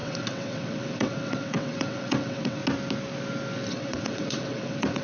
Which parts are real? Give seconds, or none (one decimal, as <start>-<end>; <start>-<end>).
2.6-3.7